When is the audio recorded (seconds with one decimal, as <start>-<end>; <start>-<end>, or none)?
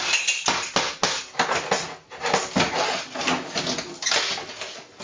0.0-5.0